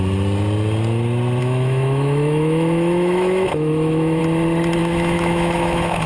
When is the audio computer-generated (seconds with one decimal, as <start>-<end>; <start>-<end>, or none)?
1.4-4.2; 4.8-6.1